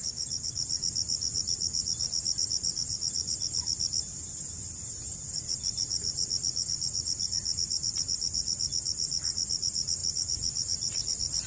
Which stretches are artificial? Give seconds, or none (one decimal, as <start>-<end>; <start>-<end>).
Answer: none